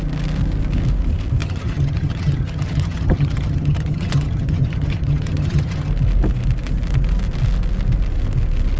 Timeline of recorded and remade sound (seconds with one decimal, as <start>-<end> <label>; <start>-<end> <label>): 0.0-1.4 recorded; 1.4-5.9 remade; 5.9-8.8 recorded